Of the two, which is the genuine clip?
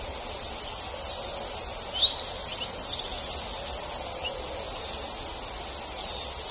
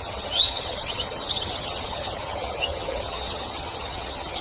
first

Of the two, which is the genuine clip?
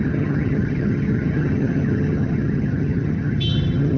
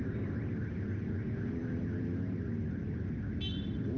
second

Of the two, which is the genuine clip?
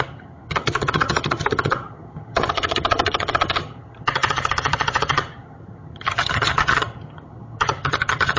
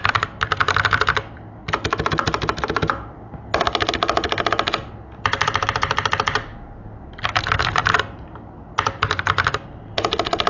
second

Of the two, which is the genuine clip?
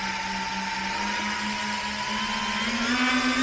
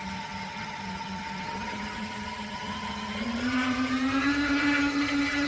first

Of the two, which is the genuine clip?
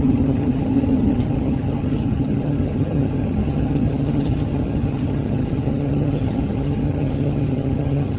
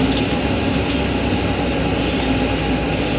second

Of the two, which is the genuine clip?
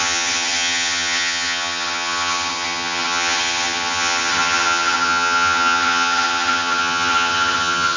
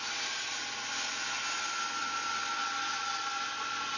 second